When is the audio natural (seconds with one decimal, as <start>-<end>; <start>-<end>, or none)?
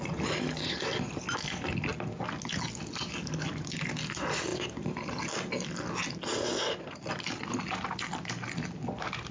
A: 0.0-9.3